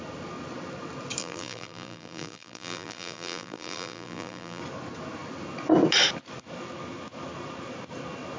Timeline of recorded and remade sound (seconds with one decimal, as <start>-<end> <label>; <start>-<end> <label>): 0.0-1.2 recorded; 1.2-4.6 remade; 4.6-8.4 recorded